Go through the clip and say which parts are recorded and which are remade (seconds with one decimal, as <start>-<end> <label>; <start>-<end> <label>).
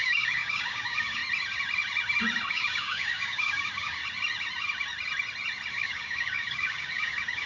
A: 0.0-1.2 remade; 1.2-2.5 recorded; 2.5-4.0 remade; 4.0-5.7 recorded; 5.7-7.5 remade